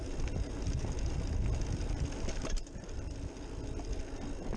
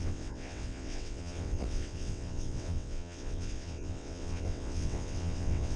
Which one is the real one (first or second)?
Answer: first